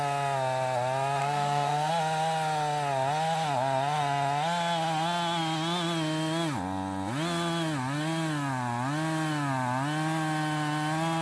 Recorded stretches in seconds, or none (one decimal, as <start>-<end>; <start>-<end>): 0.0-1.2; 1.9-11.2